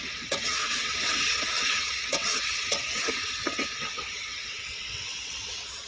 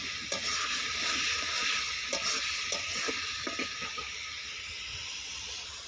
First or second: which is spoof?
first